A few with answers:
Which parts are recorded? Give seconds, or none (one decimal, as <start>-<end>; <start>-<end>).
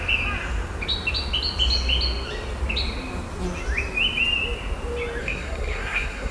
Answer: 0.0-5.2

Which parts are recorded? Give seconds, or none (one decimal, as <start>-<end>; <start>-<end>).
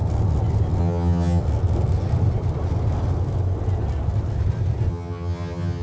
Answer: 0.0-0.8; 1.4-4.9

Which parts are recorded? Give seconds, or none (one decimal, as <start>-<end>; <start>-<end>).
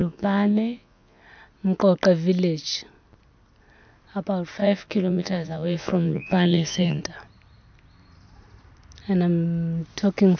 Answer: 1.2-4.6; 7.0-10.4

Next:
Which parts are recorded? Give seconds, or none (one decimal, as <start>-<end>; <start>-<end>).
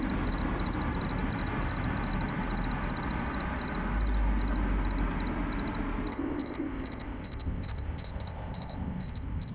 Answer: 0.0-6.1